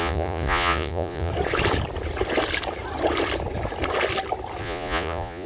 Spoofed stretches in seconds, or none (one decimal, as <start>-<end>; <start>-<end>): 0.0-1.3; 4.6-5.5